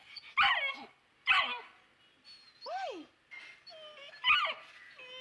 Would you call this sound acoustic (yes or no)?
yes